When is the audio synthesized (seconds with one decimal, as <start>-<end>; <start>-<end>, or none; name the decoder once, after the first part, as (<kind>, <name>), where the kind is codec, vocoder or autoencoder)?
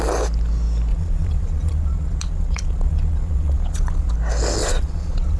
0.9-4.1 (vocoder, Vocos); 4.6-5.4